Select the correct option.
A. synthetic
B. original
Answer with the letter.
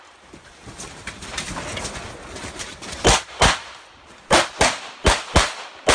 B